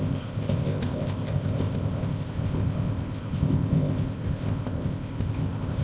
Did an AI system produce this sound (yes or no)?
yes